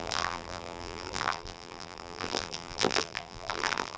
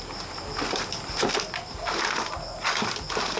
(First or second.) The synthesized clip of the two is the first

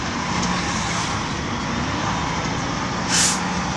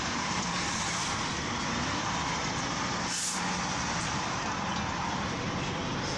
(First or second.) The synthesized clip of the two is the second